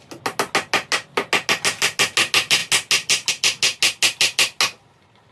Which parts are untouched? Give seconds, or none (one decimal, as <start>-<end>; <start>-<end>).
0.0-5.3